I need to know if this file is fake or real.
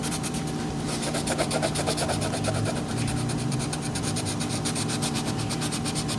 fake